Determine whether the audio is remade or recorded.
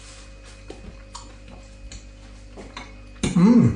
recorded